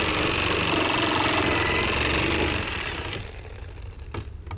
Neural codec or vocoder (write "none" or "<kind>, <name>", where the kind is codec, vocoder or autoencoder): none